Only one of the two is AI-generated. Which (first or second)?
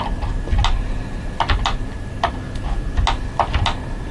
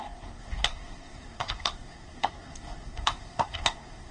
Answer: second